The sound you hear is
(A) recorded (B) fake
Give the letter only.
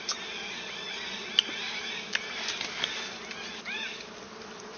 A